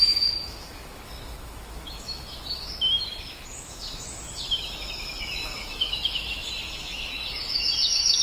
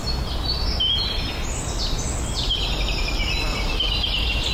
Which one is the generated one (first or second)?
first